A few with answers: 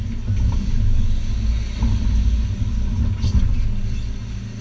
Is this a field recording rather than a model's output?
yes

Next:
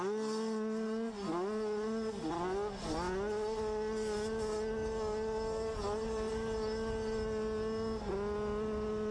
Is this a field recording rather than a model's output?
yes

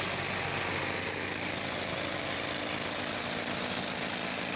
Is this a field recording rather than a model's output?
yes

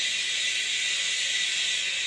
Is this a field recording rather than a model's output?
yes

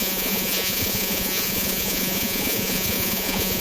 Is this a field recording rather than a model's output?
no